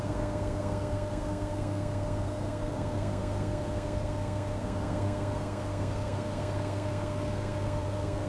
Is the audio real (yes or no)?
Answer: no